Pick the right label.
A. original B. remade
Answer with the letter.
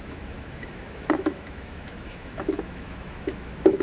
B